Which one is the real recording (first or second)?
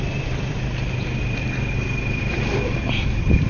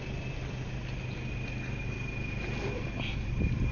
second